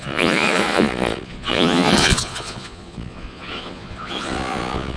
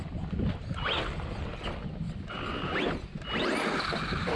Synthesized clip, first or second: first